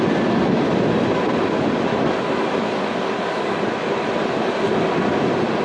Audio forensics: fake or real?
real